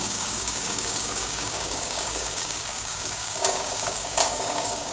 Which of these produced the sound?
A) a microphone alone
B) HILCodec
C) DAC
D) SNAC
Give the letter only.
C